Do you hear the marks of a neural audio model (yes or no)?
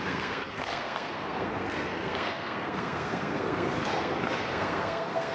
yes